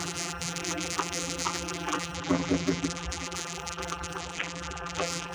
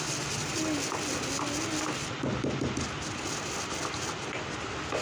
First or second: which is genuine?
second